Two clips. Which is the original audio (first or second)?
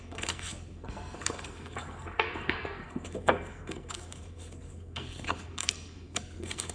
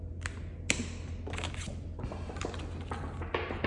second